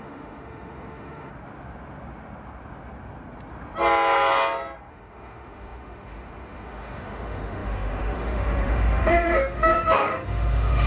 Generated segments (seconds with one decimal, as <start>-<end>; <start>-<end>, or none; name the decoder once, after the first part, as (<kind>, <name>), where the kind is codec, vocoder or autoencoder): 0.0-1.3 (autoencoder, DAC-VAE); 4.9-10.9